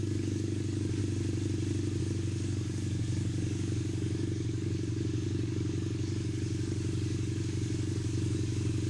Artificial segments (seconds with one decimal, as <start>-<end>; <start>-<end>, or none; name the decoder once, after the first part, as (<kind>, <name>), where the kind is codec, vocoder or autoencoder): 0.0-1.0 (codec, DAC); 2.0-8.9